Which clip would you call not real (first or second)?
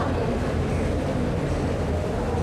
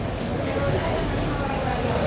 second